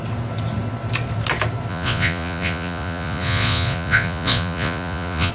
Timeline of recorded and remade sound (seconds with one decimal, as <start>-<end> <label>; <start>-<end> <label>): 0.0-1.7 recorded; 1.7-5.3 remade